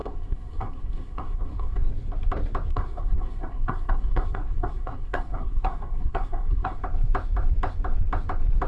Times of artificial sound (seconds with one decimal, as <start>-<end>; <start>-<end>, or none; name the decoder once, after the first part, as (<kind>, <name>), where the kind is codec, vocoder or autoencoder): 0.0-1.9 (codec, SNAC); 2.7-6.8